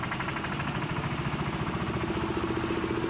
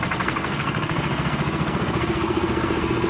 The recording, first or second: first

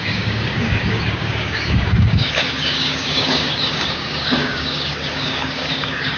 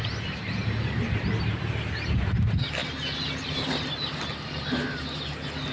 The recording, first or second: second